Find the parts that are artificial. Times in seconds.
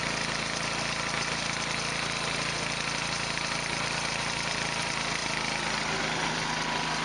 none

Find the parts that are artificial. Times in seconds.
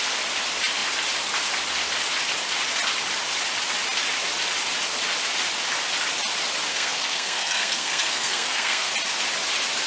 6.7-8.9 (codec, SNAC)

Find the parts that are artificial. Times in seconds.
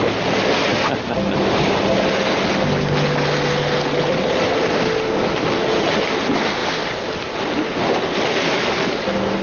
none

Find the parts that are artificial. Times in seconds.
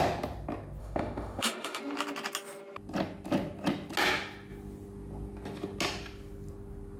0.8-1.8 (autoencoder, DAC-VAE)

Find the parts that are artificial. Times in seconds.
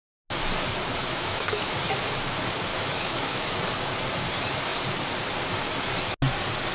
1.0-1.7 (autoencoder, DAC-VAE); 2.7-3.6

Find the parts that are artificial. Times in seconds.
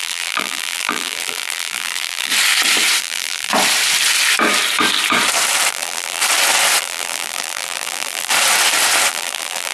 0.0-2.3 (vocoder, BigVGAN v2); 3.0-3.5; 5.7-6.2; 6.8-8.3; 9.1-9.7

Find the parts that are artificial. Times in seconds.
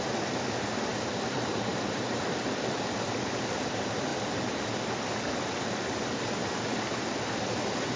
none